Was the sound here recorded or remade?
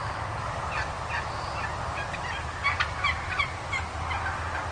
recorded